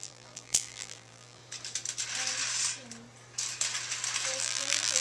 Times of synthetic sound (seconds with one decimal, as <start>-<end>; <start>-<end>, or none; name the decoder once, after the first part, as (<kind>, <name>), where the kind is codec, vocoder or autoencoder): 0.0-1.4 (vocoder, BigVGAN v2); 4.4-5.0